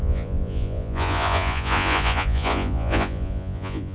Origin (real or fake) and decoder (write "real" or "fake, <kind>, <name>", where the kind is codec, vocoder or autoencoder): fake, vocoder, Vocos